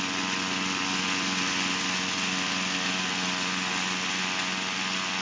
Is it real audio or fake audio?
real